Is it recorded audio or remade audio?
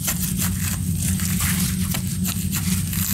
recorded